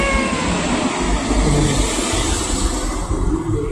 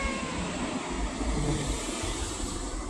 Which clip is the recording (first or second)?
first